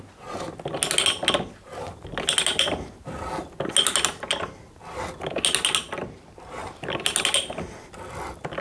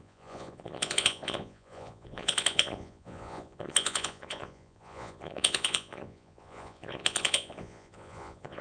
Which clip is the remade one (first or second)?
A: second